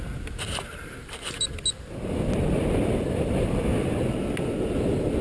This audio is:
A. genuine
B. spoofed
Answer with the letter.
A